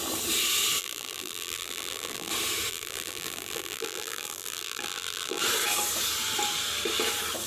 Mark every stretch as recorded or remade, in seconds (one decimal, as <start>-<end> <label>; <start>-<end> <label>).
0.0-0.8 recorded; 0.8-2.3 remade; 2.3-2.7 recorded; 2.7-5.4 remade; 5.4-7.5 recorded